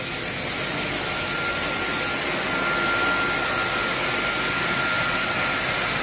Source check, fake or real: real